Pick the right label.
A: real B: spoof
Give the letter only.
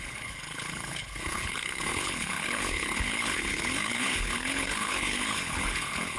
B